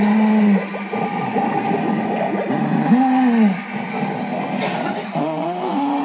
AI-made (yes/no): no